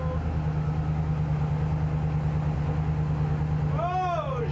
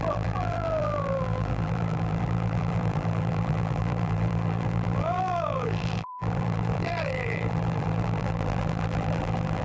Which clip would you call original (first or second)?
first